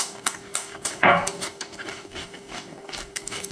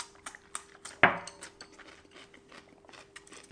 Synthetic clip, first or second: first